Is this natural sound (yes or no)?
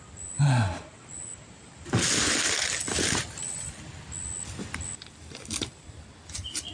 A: yes